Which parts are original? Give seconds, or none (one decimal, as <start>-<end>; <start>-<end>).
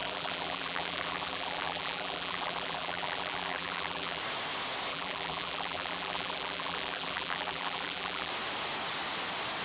4.2-4.9; 8.3-9.6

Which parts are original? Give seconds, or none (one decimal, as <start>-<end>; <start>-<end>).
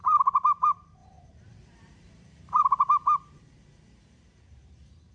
none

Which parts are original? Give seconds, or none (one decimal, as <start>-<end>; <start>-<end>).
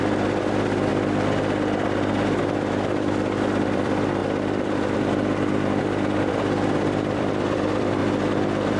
none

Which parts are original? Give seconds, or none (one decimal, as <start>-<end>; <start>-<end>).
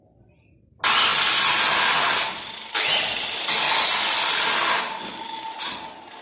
0.0-6.2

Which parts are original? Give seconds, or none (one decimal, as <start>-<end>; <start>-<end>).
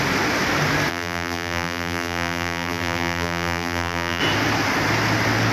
0.0-0.9; 4.2-5.5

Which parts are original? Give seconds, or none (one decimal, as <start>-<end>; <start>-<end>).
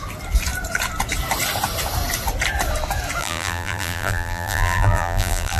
0.0-3.2